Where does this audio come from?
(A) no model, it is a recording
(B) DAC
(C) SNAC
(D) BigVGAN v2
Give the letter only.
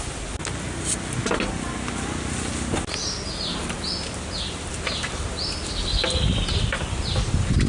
A